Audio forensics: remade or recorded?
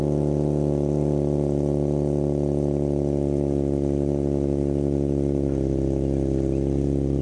recorded